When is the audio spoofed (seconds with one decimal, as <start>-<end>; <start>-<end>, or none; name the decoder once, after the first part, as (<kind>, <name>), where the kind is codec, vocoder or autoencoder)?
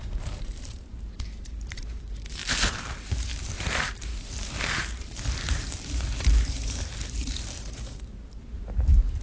0.0-9.2 (vocoder, BigVGAN v2)